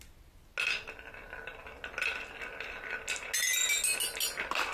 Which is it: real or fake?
real